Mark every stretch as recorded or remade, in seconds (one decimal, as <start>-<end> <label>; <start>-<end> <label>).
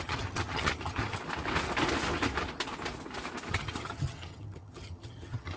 0.0-1.2 remade; 1.2-3.5 recorded; 3.5-5.6 remade